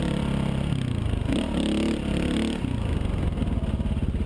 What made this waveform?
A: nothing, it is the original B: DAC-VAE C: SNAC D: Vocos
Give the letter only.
A